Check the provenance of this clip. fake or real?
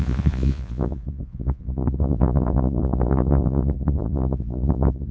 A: fake